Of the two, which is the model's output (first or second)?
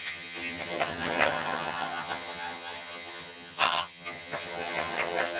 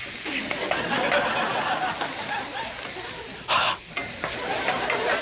first